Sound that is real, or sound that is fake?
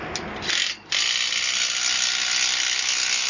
real